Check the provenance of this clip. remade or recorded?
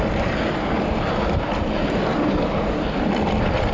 recorded